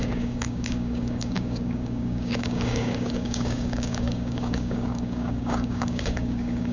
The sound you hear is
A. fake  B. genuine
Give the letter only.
A